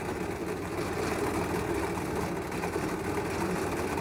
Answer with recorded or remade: recorded